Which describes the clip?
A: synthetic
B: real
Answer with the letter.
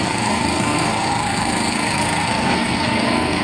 A